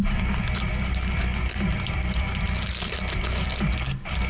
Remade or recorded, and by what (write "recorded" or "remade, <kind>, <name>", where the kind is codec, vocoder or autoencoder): remade, vocoder, BigVGAN v2